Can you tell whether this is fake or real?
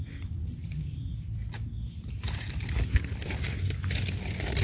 real